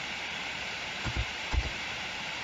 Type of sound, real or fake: fake